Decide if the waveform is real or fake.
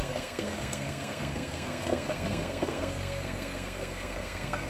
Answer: fake